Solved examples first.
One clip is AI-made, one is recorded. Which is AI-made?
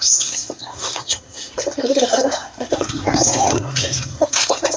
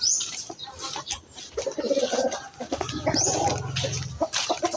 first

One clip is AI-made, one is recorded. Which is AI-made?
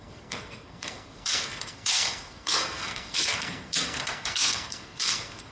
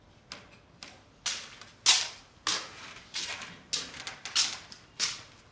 first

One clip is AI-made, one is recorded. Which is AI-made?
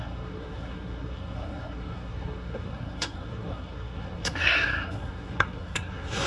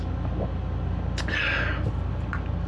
first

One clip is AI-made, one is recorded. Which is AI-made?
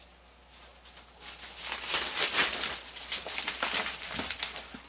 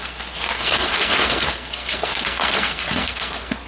second